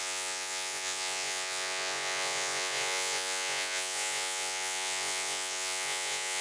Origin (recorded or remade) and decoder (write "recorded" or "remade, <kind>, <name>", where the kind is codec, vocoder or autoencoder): remade, vocoder, Vocos